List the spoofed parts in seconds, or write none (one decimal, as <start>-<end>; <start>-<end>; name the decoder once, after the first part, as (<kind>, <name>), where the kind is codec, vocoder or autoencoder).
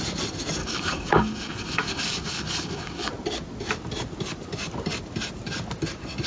0.6-3.1 (codec, DAC)